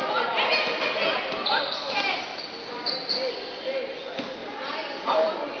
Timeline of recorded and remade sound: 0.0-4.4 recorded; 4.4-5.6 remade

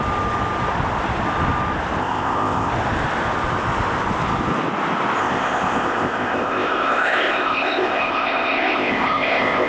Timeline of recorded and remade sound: 0.0-2.0 recorded; 2.0-2.7 remade; 2.7-5.2 recorded; 5.2-9.7 remade

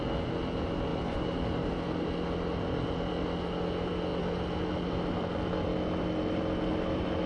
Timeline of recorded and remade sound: 0.0-7.3 recorded

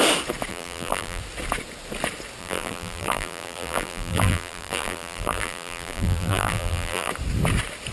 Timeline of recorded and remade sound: 0.0-0.5 recorded; 0.5-1.2 remade; 1.2-2.4 recorded; 2.4-7.1 remade; 7.1-7.9 recorded

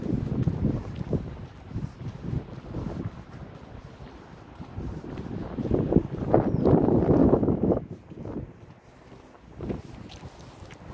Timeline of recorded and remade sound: 0.0-7.2 recorded; 7.2-7.9 remade; 7.9-10.9 recorded